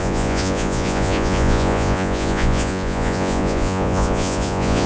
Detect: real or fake fake